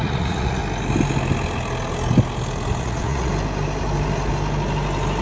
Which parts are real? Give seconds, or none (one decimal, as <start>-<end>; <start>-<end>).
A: 0.6-2.8; 3.3-5.2